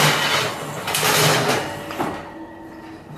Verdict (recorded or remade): recorded